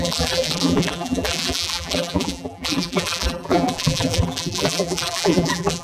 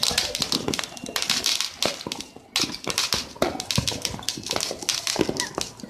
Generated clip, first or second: first